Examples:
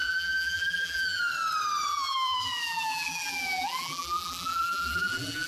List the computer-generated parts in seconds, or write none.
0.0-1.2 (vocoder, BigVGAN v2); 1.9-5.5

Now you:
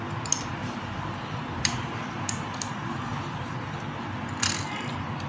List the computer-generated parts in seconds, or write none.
0.6-3.8 (vocoder, BigVGAN v2)